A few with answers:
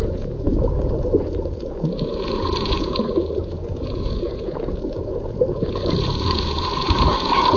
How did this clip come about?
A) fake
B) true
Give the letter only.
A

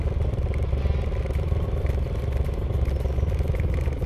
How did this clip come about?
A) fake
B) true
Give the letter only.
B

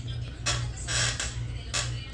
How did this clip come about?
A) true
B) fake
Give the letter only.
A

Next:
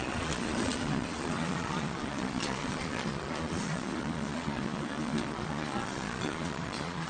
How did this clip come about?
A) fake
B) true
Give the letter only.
A